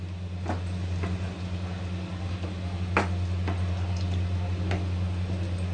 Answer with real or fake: real